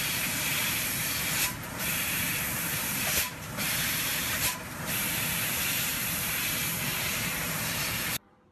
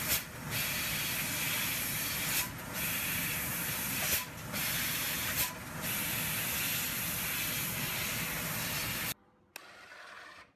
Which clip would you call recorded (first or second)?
second